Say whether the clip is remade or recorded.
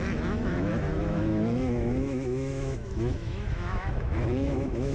remade